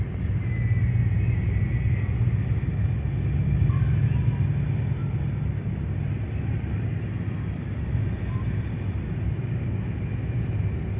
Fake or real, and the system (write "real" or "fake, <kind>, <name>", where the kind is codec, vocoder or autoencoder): real